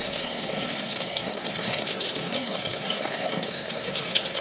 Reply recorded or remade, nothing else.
remade